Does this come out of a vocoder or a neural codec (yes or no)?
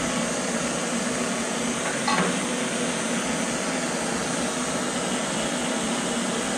no